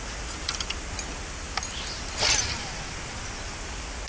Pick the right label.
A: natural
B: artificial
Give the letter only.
A